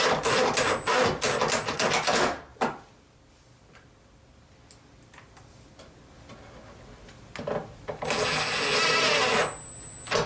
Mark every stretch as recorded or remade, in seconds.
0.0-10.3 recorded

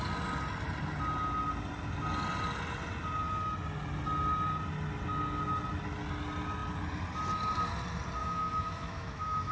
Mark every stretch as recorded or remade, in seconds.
0.0-8.2 recorded; 8.2-9.5 remade

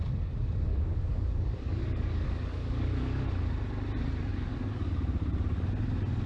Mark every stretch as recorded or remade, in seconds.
0.0-0.7 recorded; 0.7-3.3 remade; 3.3-4.3 recorded; 4.3-5.0 remade; 5.0-6.3 recorded